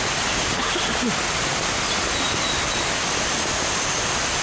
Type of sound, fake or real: real